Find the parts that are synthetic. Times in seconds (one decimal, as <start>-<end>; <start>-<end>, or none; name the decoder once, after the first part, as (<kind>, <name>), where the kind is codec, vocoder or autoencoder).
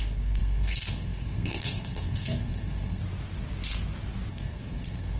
0.0-3.0 (codec, SNAC); 4.3-5.2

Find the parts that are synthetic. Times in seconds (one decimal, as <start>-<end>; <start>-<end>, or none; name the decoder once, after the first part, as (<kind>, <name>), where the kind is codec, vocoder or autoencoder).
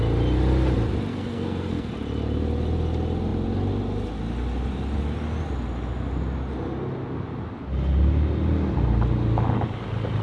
1.1-1.9 (codec, SNAC)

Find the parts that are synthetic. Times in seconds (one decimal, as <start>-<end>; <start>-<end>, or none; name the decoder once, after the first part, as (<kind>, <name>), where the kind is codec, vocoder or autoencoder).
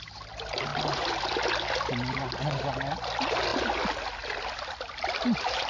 0.7-1.2 (vocoder, BigVGAN v2)